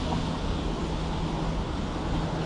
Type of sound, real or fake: real